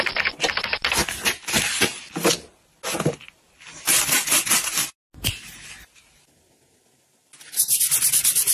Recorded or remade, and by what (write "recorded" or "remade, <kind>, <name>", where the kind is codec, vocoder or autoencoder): recorded